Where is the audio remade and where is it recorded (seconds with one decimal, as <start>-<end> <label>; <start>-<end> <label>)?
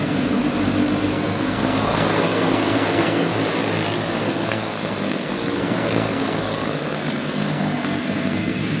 0.0-0.4 remade; 0.4-1.0 recorded; 1.0-3.3 remade; 3.3-4.2 recorded; 4.2-8.8 remade